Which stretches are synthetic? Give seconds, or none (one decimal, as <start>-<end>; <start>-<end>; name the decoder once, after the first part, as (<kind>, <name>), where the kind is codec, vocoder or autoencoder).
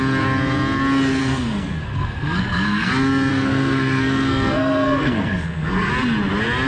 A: 1.2-2.9 (codec, SNAC); 3.3-5.9